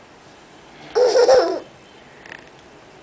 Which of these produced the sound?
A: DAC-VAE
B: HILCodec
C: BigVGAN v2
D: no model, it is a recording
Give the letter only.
D